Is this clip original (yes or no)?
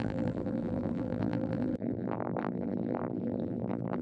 no